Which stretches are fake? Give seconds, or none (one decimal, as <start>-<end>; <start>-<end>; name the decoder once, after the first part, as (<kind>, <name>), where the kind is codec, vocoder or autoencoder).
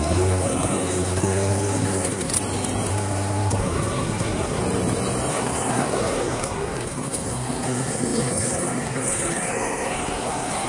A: 0.0-2.3 (codec, SNAC); 2.9-4.6; 5.3-10.7